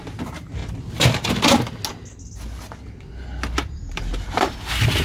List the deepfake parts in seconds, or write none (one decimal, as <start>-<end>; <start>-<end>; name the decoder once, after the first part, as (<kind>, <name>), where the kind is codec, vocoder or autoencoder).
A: 0.0-0.6 (vocoder, BigVGAN v2); 3.6-5.0